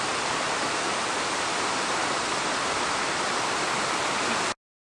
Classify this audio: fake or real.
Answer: real